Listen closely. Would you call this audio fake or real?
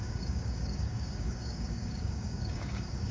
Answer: fake